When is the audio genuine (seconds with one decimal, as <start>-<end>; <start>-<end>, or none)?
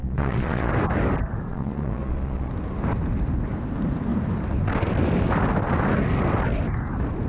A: 0.7-1.5; 2.5-7.3